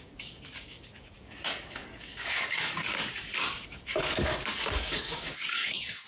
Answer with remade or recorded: remade